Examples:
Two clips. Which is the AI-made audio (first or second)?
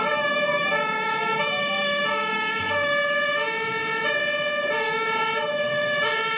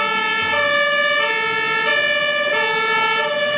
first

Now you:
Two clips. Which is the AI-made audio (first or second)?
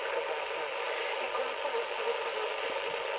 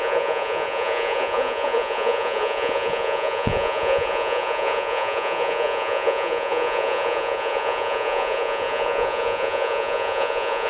second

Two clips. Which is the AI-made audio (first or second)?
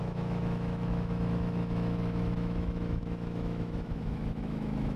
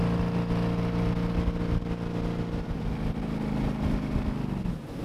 first